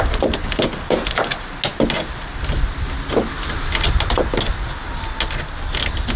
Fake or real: real